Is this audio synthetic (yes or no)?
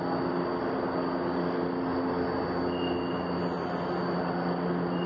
no